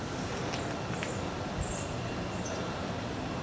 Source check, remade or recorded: remade